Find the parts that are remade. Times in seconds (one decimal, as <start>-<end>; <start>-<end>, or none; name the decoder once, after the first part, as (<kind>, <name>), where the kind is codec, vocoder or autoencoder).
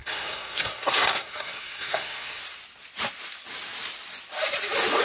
0.0-2.4 (codec, SNAC)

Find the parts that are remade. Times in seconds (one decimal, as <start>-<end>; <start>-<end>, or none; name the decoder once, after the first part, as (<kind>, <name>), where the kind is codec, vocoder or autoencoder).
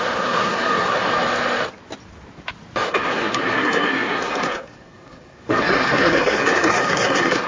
0.0-1.1 (codec, SNAC); 2.9-7.5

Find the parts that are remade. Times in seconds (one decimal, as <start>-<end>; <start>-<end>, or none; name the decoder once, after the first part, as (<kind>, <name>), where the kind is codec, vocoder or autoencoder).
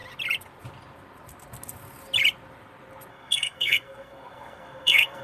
3.1-5.2 (codec, SNAC)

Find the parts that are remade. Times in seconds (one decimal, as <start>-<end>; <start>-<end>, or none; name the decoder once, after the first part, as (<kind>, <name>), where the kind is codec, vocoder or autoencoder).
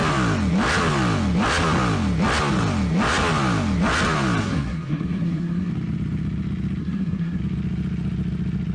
4.4-5.7 (codec, SNAC); 6.8-7.4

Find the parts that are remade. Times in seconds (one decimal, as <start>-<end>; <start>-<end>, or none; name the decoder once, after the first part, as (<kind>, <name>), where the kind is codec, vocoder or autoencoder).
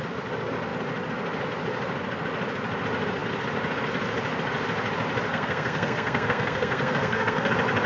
5.3-7.5 (codec, SNAC)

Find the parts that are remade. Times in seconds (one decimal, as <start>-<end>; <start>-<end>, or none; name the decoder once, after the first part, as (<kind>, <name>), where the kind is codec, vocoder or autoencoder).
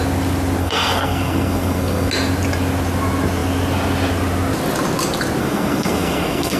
0.6-2.1 (codec, SNAC); 5.4-6.6